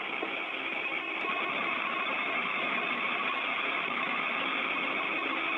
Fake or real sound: real